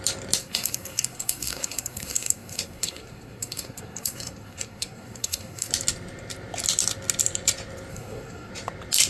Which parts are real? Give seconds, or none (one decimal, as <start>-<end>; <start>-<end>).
0.0-0.4; 5.7-7.9; 8.5-9.1